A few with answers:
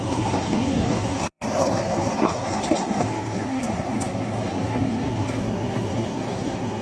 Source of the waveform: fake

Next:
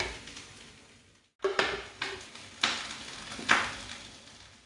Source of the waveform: real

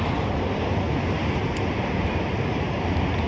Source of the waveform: real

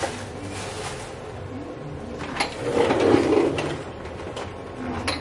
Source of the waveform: real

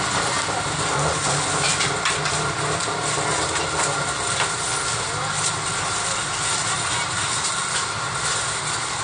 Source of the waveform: real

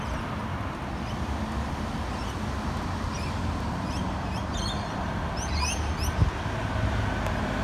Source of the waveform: real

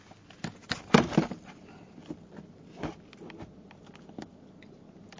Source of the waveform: real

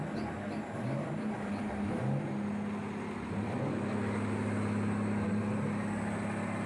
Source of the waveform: real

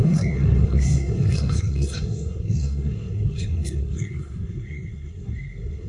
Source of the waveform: fake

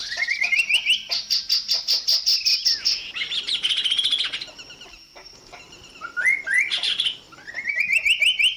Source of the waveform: real